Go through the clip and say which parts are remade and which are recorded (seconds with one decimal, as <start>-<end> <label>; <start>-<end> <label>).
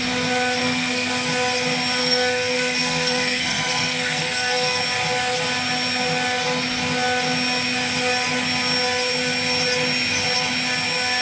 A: 0.0-0.6 recorded; 0.6-1.1 remade; 1.1-2.0 recorded; 2.0-4.8 remade; 4.8-11.2 recorded